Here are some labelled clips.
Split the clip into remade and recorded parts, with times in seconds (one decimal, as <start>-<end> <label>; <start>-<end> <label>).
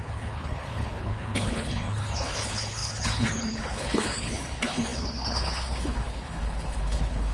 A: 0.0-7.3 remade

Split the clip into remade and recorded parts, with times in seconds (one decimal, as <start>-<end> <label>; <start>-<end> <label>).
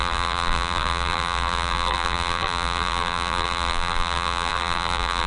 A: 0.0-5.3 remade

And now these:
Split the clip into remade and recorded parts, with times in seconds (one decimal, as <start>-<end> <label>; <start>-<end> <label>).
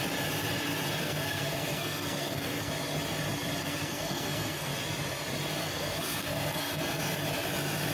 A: 0.0-1.0 recorded; 1.0-2.7 remade; 2.7-3.6 recorded; 3.6-4.7 remade; 4.7-5.6 recorded; 5.6-7.2 remade; 7.2-7.9 recorded